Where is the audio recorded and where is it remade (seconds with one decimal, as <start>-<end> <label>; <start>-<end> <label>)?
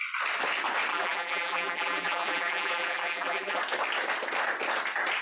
0.0-0.9 recorded; 0.9-3.6 remade; 3.6-5.2 recorded